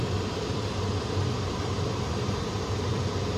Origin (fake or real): real